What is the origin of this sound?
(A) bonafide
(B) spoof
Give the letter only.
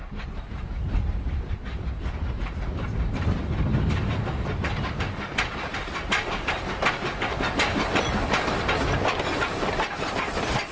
A